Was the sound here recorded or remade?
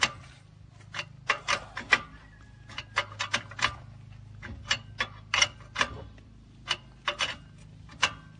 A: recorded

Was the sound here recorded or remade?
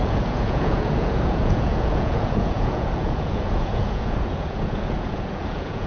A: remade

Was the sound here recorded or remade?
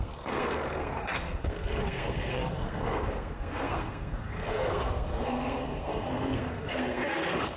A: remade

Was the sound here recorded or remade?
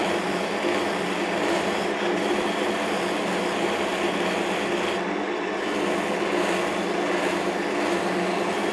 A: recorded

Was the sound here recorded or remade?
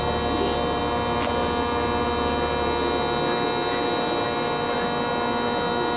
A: recorded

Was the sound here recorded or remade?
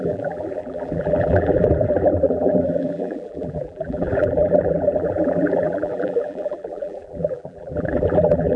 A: remade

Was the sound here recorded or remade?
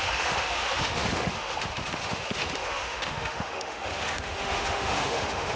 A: remade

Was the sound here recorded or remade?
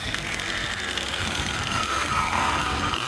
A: remade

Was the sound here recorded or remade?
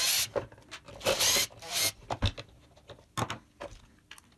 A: recorded